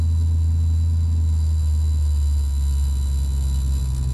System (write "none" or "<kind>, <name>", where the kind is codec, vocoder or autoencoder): none